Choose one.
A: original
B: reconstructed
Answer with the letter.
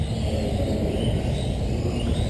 A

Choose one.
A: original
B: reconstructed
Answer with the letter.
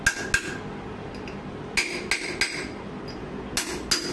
A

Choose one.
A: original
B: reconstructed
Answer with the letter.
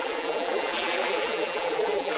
B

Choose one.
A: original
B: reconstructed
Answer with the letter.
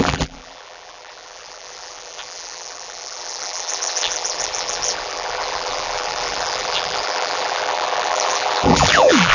B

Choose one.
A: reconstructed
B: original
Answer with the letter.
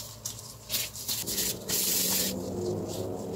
B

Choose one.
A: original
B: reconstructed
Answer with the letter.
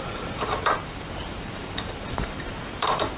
B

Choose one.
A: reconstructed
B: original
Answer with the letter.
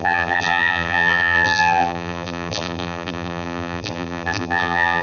A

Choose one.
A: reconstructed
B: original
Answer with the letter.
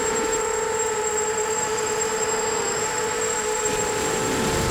A